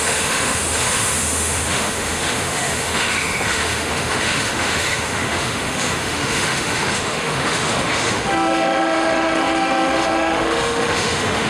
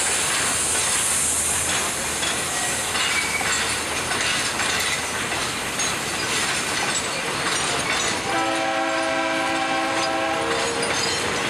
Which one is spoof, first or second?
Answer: first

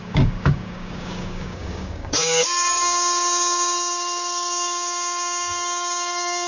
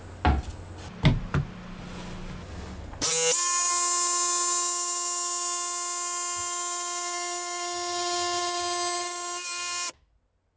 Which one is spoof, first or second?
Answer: first